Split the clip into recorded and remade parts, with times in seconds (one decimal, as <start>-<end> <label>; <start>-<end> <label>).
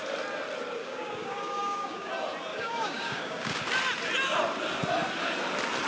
0.0-0.8 recorded; 0.8-2.1 remade; 2.1-2.5 recorded; 2.5-3.6 remade; 3.6-5.9 recorded